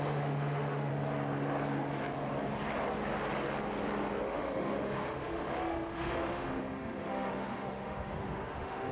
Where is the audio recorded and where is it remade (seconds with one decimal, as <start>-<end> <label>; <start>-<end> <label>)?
0.0-0.9 remade; 0.9-4.2 recorded; 4.2-8.9 remade